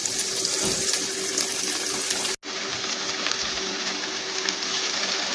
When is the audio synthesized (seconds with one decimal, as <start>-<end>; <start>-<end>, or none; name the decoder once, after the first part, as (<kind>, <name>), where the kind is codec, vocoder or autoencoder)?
none